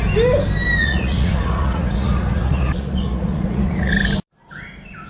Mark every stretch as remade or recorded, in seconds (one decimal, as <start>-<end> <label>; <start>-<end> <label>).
0.0-0.8 recorded; 0.8-3.9 remade; 3.9-5.1 recorded